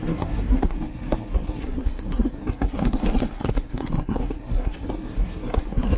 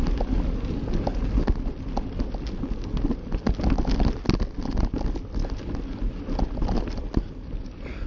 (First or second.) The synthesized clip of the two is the first